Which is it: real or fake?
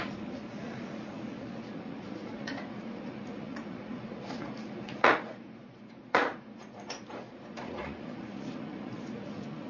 fake